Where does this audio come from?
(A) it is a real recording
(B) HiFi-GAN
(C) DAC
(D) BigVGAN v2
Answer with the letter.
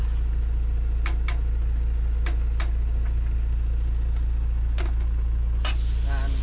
A